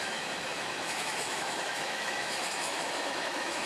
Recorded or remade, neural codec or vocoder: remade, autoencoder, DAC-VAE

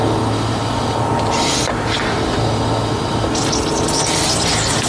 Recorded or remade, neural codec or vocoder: recorded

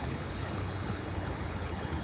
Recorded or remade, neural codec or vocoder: remade, codec, HILCodec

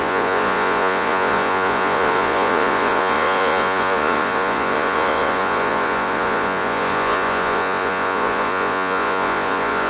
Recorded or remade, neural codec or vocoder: remade, vocoder, Vocos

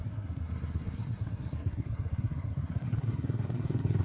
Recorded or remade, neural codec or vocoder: remade, codec, SNAC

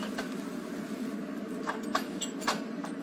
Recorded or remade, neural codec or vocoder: recorded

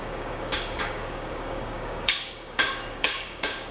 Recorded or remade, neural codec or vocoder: remade, codec, DAC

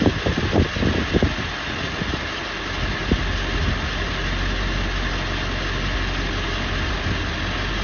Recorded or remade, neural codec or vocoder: recorded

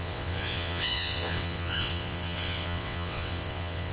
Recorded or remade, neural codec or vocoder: remade, vocoder, WaveNeXt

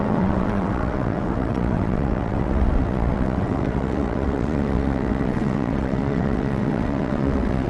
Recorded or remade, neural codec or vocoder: remade, vocoder, WaveNeXt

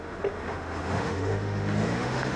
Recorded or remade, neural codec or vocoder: remade, autoencoder, DAC-VAE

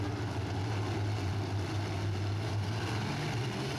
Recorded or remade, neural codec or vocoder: recorded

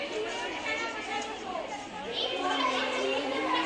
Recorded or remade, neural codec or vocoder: recorded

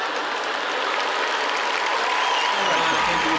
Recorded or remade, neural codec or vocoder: recorded